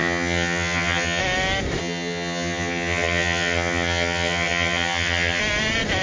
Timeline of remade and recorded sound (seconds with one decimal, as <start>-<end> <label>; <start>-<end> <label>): 0.0-1.2 remade; 1.2-1.8 recorded; 1.8-5.4 remade; 5.4-6.0 recorded